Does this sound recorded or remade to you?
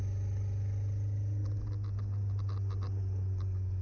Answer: recorded